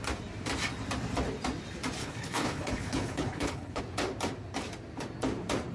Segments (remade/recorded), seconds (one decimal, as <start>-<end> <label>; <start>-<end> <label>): 0.0-2.0 recorded; 2.0-3.8 remade; 3.8-5.7 recorded